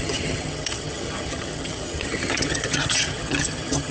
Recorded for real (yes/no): no